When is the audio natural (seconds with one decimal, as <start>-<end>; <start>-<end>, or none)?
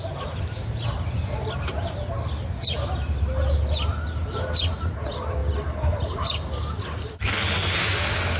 0.0-8.4